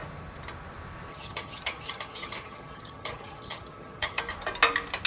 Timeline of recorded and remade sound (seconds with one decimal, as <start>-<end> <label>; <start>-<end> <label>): 0.0-1.1 recorded; 1.1-4.2 remade; 4.2-5.1 recorded